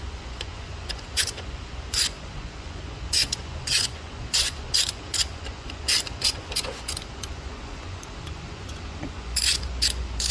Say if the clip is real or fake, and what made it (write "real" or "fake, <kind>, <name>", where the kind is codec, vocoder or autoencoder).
fake, vocoder, Vocos